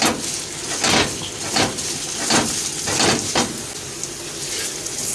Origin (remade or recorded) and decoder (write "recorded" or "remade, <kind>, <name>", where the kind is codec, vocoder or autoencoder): recorded